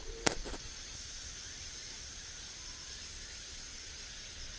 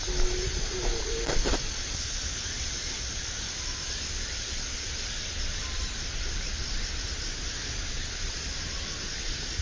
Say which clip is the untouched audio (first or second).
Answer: second